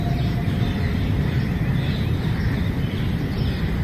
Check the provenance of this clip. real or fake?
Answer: real